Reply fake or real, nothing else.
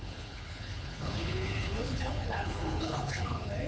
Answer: fake